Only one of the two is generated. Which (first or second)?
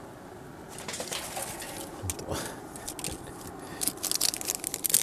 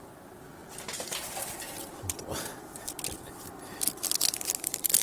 second